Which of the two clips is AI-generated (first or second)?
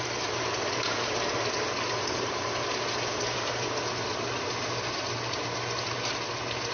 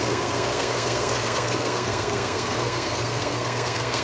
second